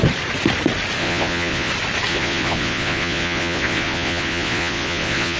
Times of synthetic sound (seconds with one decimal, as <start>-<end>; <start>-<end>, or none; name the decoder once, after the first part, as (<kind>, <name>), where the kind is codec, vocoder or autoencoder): 1.0-1.7 (vocoder, Vocos); 2.1-5.4